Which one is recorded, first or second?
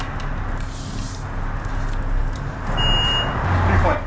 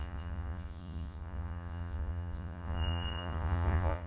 first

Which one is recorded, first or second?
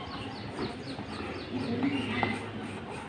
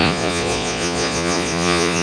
first